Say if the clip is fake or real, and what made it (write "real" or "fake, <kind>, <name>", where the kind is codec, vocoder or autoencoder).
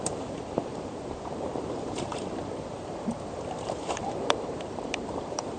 fake, vocoder, BigVGAN v2